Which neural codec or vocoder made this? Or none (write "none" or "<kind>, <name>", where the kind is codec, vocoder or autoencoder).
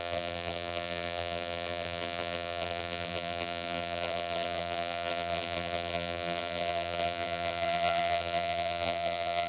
vocoder, BigVGAN v2